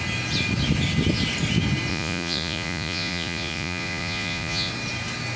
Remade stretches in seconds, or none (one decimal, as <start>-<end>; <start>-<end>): 1.9-4.7

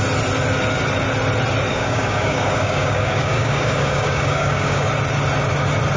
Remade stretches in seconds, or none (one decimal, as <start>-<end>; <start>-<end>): 1.7-4.9

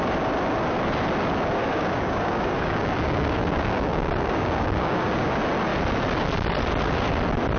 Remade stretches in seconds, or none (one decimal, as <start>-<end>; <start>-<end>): 1.6-5.3

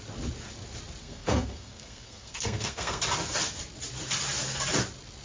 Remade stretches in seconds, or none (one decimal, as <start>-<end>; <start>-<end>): 1.0-3.0

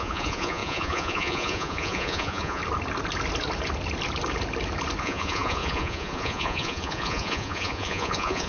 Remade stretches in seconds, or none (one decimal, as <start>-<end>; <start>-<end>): 0.0-2.6; 5.0-8.5

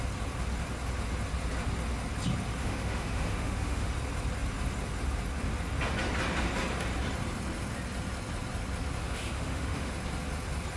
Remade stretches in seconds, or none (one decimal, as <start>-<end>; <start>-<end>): 2.6-3.9; 9.0-9.9

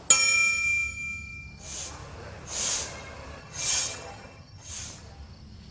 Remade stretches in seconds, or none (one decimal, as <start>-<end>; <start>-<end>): 3.4-4.7